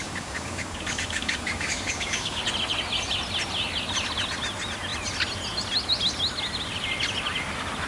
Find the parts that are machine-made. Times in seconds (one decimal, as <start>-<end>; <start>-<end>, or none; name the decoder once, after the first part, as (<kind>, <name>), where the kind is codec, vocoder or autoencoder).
0.0-2.4 (codec, DAC)